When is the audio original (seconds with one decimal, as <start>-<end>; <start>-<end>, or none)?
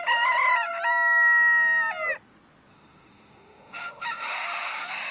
0.0-2.7